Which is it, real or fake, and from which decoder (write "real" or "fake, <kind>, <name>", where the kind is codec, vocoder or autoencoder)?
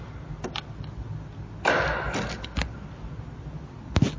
real